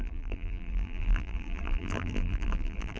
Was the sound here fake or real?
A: fake